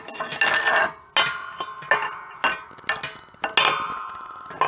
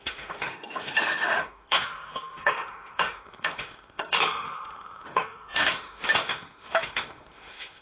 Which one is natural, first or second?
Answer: first